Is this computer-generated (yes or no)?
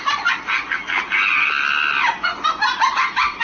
no